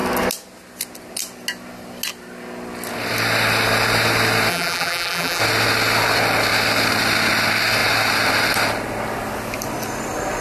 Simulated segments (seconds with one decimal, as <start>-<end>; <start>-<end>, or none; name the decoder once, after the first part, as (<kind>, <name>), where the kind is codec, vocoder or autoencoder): 4.5-5.4 (vocoder, BigVGAN v2)